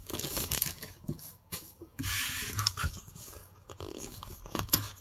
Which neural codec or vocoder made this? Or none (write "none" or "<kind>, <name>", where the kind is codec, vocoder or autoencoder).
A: codec, DAC